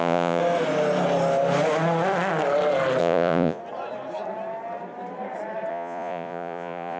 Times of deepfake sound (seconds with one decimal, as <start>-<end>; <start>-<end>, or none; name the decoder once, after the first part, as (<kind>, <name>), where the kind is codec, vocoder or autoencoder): 0.0-0.4 (vocoder, Vocos); 3.0-3.6; 5.7-7.0